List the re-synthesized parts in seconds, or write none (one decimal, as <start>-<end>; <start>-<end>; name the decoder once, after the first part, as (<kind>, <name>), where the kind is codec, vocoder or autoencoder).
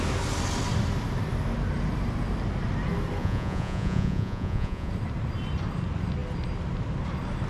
3.2-4.9 (vocoder, Vocos)